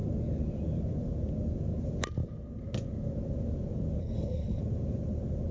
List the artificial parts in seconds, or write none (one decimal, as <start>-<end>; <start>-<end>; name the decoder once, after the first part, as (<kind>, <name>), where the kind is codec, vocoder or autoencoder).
4.0-4.6 (codec, HILCodec)